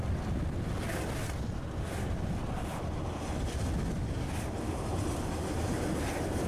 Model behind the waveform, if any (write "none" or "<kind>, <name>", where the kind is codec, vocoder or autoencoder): none